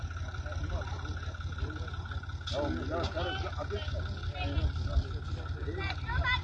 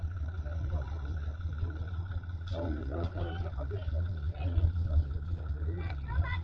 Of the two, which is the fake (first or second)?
second